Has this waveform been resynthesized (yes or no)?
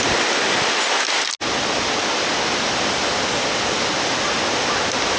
no